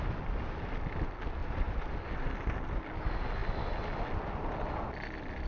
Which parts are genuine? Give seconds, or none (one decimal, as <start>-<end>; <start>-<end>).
0.0-1.4; 1.9-5.5

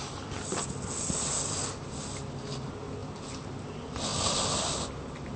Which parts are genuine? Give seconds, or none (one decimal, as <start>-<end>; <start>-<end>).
0.0-5.4

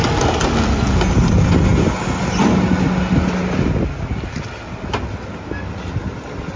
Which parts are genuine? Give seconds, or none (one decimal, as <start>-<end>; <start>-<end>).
0.0-6.6

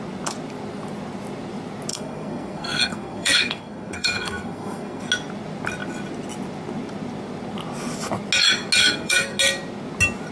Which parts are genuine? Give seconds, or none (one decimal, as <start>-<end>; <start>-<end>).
0.0-1.9; 5.1-8.8; 9.4-10.3

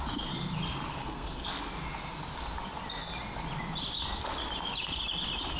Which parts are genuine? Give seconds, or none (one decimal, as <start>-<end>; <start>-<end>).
0.0-0.9; 1.5-5.6

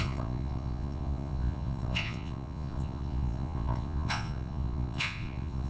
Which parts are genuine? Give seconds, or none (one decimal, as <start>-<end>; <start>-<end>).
none

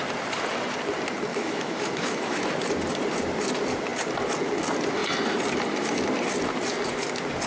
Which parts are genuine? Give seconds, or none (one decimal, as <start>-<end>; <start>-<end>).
0.0-1.3; 2.4-7.5